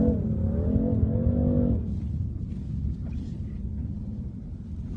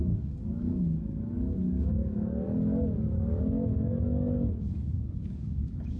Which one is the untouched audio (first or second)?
first